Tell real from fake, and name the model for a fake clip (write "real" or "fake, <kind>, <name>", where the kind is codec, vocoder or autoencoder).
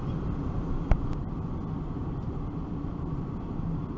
real